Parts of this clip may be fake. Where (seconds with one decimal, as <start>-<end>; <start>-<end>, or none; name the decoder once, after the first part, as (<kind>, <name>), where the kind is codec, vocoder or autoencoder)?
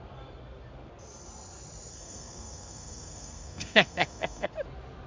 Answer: 1.9-4.5 (codec, SNAC)